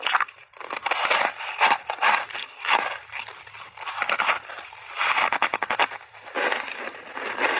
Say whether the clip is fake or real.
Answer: real